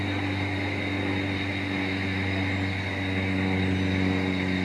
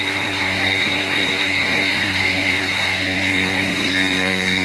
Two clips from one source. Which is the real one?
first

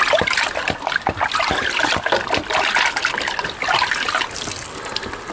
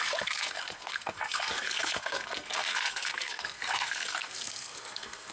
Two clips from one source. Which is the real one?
first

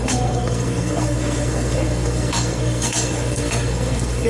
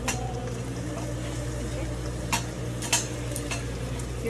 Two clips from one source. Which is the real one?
second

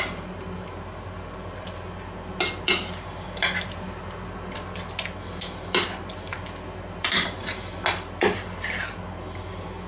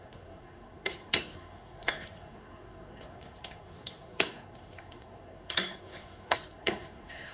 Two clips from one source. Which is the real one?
first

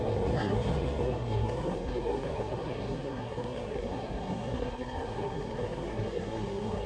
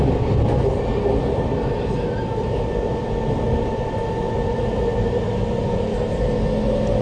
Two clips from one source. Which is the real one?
second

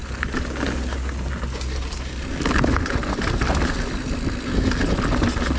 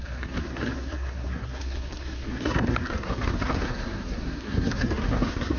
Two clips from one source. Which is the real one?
first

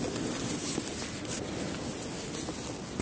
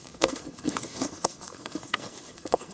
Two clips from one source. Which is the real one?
first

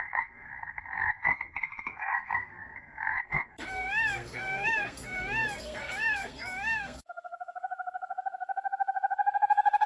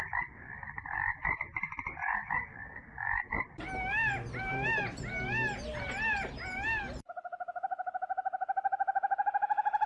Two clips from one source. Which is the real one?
second